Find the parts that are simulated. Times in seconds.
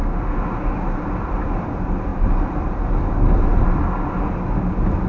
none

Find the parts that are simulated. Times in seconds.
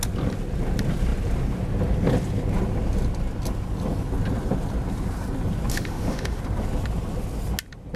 5.7-6.4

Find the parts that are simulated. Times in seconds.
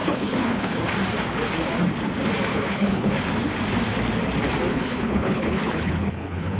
0.0-0.8; 2.5-3.1; 4.7-6.6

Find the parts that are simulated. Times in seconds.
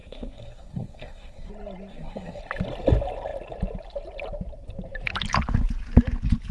0.0-1.5; 1.9-2.4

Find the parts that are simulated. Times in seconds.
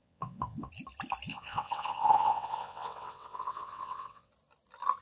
0.0-0.7; 1.3-4.3